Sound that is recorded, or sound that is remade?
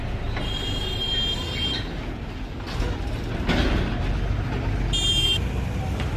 recorded